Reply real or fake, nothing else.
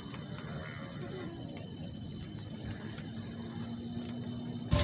real